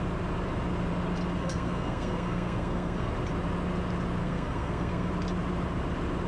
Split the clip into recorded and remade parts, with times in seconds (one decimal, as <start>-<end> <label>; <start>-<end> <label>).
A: 0.0-1.4 recorded; 1.4-3.1 remade; 3.1-4.2 recorded; 4.2-5.1 remade; 5.1-6.3 recorded